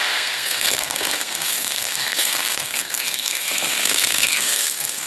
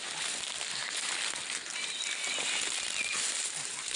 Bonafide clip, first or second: second